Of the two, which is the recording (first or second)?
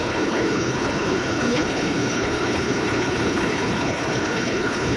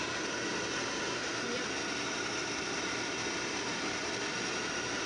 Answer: second